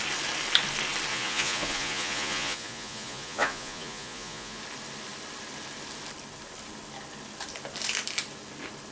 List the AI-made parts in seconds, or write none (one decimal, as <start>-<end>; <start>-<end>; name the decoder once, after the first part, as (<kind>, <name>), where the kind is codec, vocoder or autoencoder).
1.1-4.6 (vocoder, Vocos)